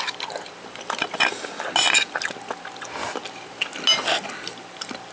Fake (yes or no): no